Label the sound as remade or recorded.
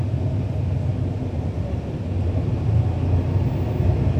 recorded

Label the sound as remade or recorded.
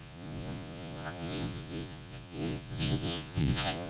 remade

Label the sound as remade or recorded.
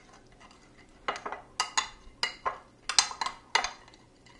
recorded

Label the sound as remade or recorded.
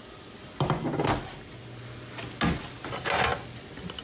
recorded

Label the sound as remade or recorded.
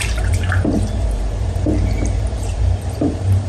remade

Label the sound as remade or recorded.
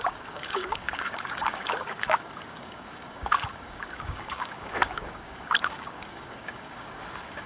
remade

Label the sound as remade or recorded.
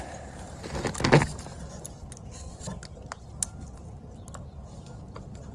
recorded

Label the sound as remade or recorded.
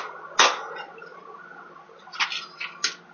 recorded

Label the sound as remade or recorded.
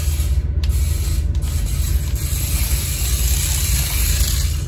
recorded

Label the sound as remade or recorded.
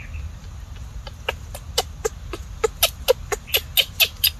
recorded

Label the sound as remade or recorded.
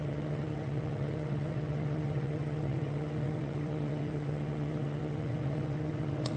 remade